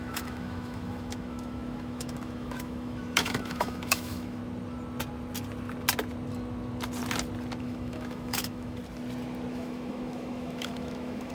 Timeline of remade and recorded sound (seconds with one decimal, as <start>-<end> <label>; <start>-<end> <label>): 0.0-4.4 remade; 4.4-7.6 recorded; 7.6-8.8 remade; 8.8-9.5 recorded; 9.5-11.3 remade